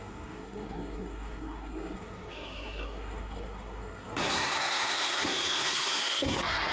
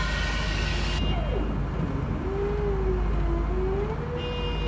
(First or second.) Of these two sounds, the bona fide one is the second